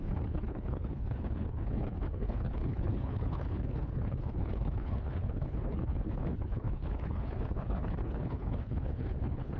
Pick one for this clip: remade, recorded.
remade